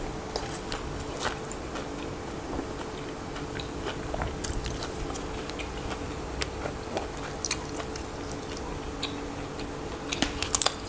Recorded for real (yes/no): yes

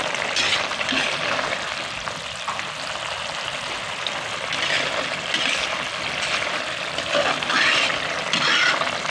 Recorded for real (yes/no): yes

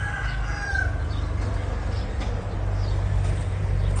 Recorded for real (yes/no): yes